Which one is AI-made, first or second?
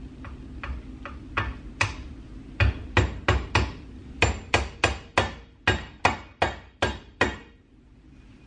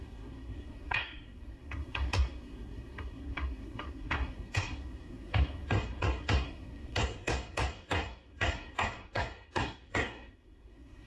second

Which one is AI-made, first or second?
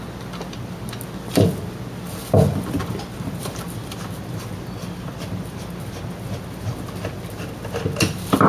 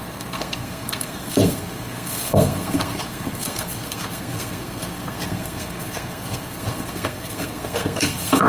second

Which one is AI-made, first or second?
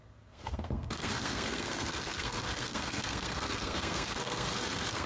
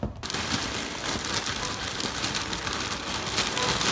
first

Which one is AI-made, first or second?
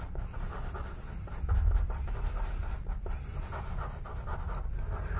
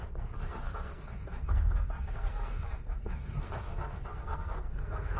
second